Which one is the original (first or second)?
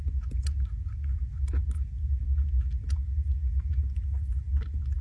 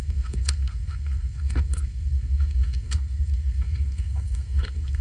first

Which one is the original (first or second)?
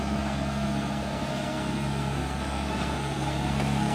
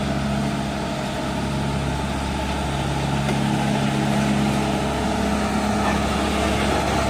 second